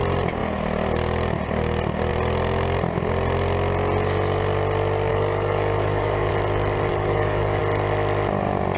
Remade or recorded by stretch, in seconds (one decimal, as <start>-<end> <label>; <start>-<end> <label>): 0.0-5.1 recorded; 5.1-6.3 remade; 6.3-6.9 recorded; 6.9-7.6 remade; 7.6-8.8 recorded